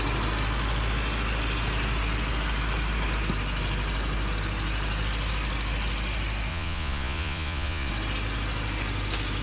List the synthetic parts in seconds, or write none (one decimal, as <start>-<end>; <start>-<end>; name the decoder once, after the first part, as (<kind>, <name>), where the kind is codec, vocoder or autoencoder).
6.5-7.9 (vocoder, Vocos)